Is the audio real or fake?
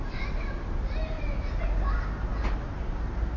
real